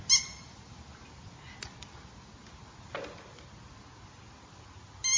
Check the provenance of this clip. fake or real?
real